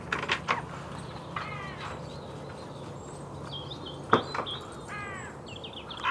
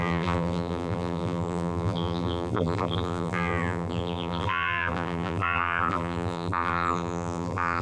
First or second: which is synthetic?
second